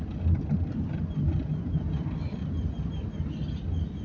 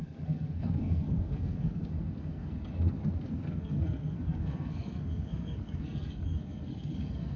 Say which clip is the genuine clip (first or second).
first